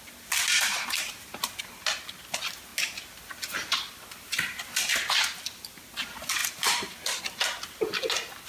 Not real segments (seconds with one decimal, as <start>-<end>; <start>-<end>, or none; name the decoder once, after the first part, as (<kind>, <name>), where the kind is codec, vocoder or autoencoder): 0.4-1.6 (vocoder, BigVGAN v2); 6.4-7.2